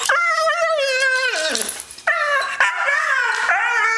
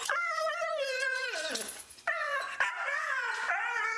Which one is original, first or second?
first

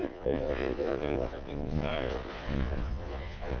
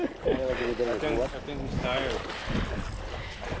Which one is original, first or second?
second